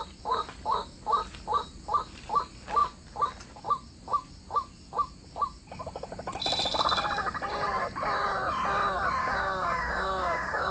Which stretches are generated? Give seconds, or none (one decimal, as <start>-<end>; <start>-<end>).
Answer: 9.2-10.7